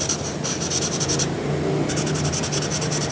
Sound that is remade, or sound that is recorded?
recorded